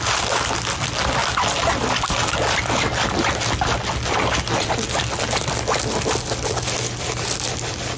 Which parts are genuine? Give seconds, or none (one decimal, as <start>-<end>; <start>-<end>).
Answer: 0.0-8.0